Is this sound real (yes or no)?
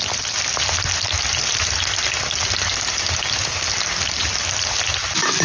yes